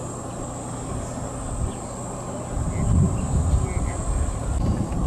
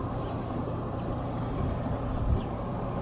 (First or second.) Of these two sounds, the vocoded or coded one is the second